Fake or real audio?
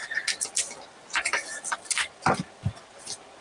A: real